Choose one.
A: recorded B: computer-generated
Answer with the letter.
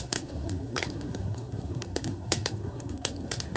B